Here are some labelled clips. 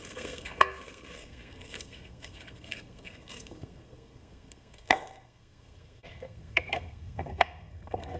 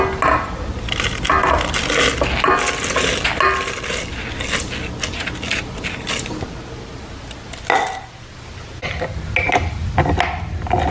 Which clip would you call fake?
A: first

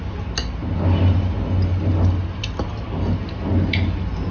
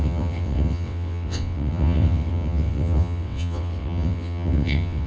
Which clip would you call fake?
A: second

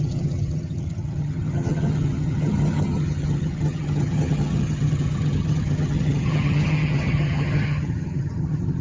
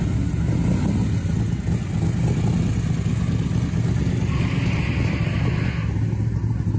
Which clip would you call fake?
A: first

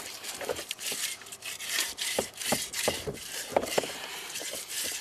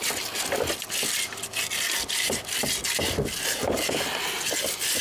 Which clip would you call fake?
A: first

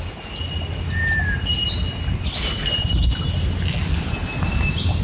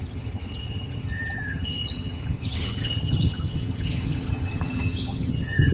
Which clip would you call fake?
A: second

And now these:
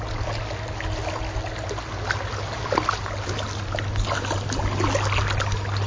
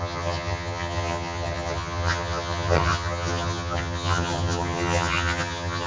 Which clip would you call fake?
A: second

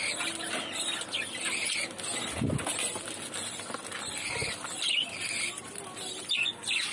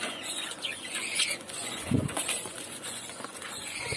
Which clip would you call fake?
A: second